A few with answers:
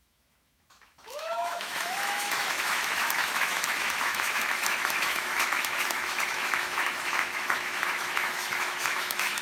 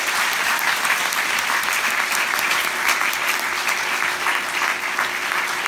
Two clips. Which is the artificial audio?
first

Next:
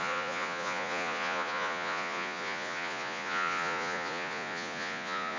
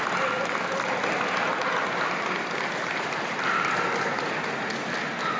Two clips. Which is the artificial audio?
first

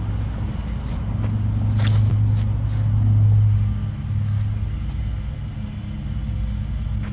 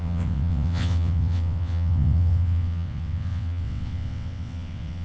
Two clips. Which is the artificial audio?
second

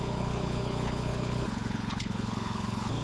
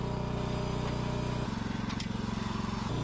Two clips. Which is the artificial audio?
first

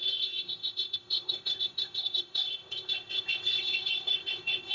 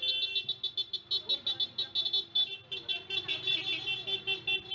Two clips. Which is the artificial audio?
first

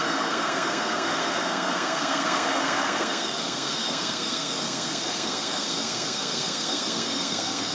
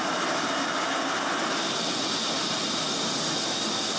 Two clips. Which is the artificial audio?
first